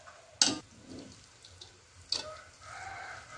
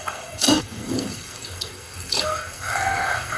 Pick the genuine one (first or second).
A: first